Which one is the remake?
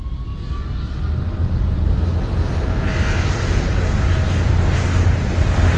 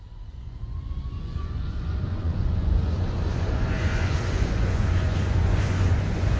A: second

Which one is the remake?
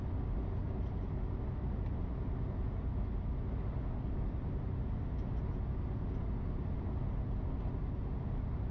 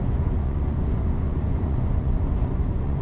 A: second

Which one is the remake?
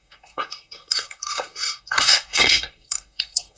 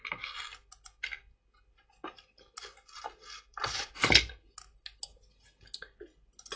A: first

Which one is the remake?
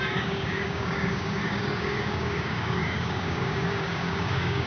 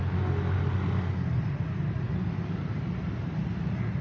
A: first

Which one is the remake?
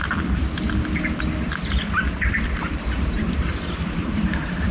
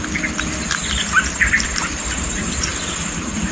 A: first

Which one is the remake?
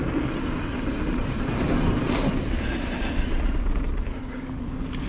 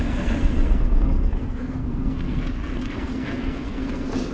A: second